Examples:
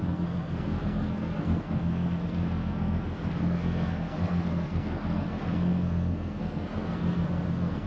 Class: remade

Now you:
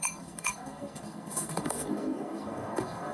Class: remade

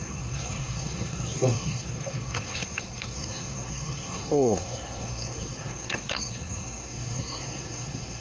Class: remade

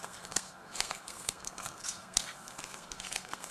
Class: remade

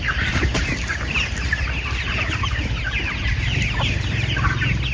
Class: recorded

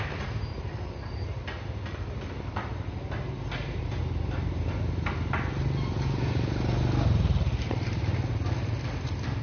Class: recorded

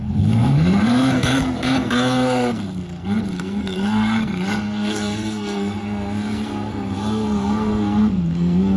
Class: remade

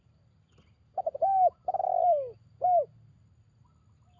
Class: recorded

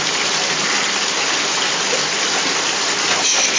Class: recorded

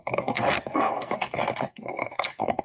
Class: remade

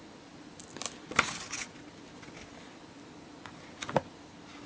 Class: recorded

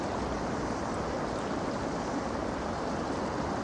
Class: recorded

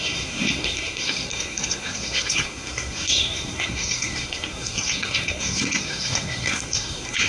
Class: remade